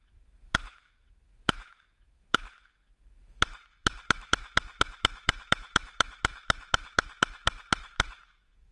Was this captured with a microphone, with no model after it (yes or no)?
no